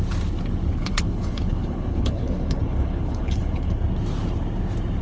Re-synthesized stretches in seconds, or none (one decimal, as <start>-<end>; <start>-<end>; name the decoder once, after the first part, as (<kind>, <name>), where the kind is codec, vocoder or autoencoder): 0.8-3.8 (codec, HILCodec)